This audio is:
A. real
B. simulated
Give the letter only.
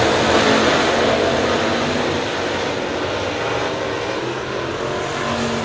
A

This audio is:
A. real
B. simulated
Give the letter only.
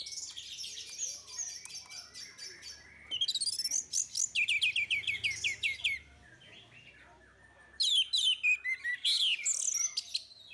A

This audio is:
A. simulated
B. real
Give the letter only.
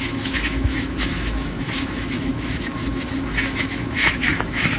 A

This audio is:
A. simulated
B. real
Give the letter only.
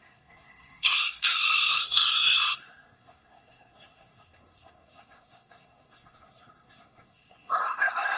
A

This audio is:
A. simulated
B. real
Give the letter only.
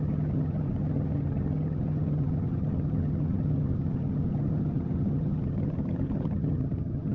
A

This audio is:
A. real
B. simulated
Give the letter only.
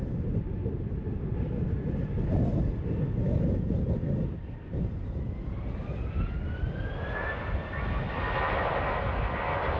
A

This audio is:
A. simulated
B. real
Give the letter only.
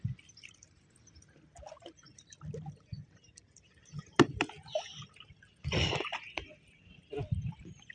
B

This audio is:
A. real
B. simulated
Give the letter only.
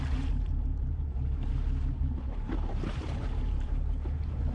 B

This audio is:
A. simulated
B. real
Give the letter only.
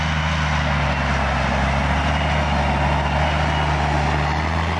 B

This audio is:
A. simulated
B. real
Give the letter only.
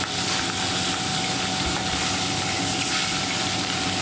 B